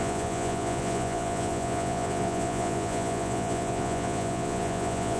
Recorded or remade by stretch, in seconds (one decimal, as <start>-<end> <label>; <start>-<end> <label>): 0.0-5.2 remade